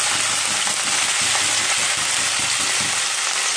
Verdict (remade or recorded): recorded